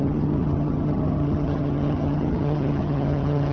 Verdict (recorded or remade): remade